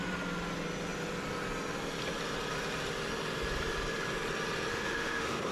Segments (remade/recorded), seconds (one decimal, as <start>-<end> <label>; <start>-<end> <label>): 0.0-4.7 recorded; 4.7-5.5 remade